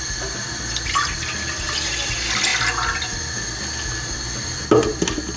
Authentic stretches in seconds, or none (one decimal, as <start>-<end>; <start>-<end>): 0.0-5.4